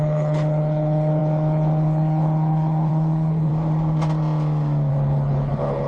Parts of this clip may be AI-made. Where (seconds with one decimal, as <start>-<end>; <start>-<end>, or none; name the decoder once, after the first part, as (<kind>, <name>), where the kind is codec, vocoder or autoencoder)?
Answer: 0.0-3.5 (codec, HILCodec); 4.9-5.9